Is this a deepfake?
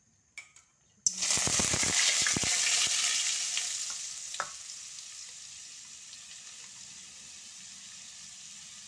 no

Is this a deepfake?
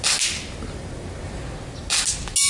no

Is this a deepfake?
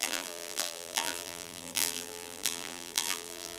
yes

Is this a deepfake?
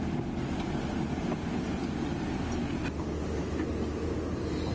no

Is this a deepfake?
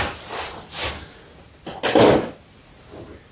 no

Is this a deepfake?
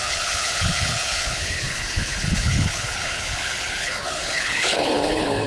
yes